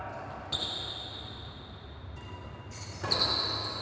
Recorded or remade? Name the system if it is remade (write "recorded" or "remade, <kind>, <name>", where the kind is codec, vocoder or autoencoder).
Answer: recorded